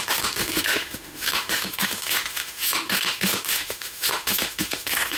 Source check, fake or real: fake